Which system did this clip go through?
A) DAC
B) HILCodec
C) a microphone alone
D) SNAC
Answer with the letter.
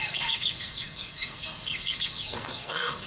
D